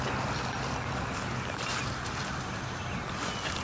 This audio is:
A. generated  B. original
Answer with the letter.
B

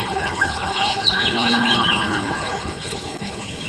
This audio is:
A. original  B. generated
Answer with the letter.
B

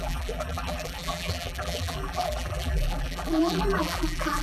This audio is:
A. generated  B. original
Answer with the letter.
A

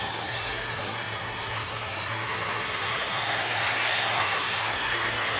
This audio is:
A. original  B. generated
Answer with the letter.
B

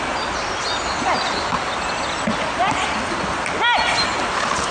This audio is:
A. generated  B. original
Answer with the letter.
B